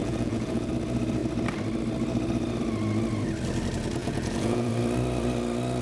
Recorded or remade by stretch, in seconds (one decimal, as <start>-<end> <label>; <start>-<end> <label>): 0.0-0.7 remade; 0.7-4.0 recorded; 4.0-4.7 remade; 4.7-5.8 recorded